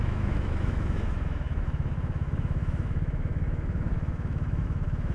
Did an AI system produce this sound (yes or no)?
yes